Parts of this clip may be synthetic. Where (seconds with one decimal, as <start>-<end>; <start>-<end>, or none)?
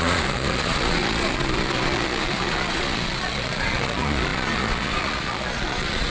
0.0-6.1